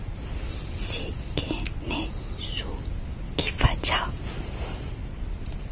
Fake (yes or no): no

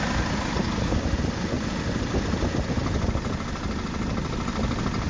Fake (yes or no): no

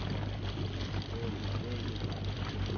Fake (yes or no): no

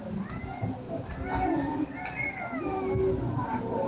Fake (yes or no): no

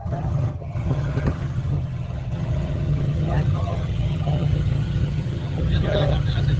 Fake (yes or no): yes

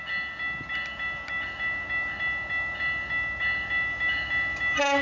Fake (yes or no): no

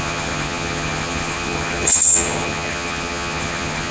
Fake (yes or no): yes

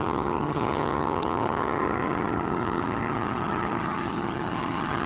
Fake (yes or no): yes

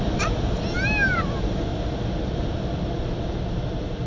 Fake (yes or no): no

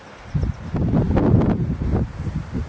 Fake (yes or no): no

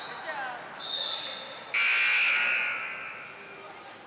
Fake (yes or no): no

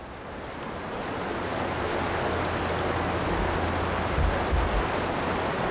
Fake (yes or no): no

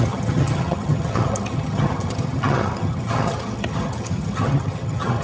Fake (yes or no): yes